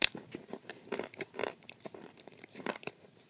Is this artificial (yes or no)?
yes